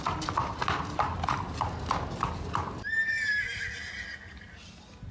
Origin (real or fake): real